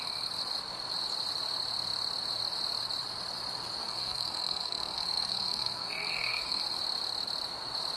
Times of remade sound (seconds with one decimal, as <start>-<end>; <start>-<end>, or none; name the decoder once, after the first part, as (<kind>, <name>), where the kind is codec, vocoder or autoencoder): 3.8-6.6 (codec, SNAC)